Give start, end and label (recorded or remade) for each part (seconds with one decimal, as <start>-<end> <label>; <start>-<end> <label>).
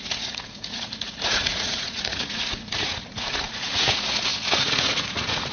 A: 0.0-5.5 remade